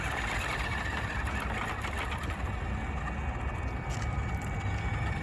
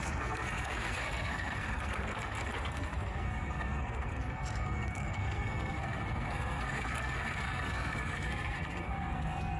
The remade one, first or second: second